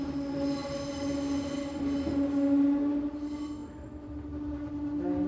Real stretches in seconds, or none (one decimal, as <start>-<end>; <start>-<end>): 0.0-3.6; 4.7-5.3